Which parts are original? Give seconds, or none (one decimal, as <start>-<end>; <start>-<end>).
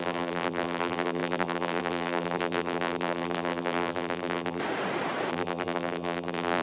4.6-5.3